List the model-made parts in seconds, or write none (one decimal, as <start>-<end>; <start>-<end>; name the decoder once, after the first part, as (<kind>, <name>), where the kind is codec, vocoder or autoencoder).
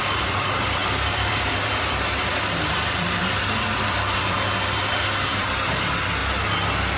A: 0.0-6.2 (vocoder, BigVGAN v2)